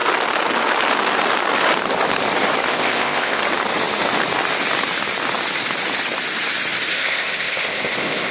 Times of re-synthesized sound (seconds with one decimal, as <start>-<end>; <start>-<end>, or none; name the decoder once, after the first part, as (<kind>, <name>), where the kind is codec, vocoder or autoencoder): 2.7-3.4 (codec, ZipCodec); 6.9-8.3